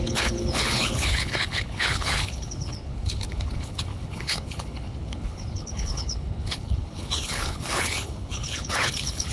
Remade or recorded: remade